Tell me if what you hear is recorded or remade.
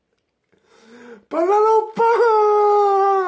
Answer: recorded